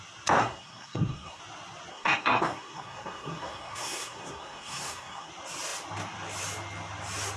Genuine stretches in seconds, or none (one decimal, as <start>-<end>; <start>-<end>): 0.0-0.4; 1.4-1.9; 5.3-7.4